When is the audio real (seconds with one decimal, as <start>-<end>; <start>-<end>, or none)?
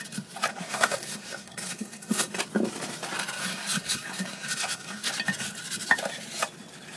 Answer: 0.0-0.5; 2.4-3.4; 5.1-7.0